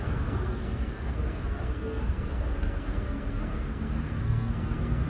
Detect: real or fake fake